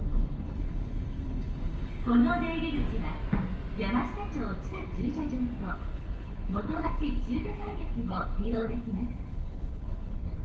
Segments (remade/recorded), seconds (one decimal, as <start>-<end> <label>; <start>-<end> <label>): 0.0-2.2 remade; 2.2-4.7 recorded; 4.7-5.2 remade; 5.2-5.7 recorded; 5.7-10.4 remade